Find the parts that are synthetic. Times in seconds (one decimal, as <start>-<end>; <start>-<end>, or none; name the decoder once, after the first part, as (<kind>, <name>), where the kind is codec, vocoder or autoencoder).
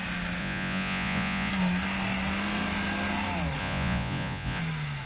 0.4-1.5 (vocoder, Vocos); 3.6-4.6